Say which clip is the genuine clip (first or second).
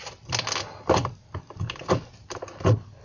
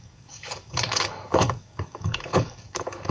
first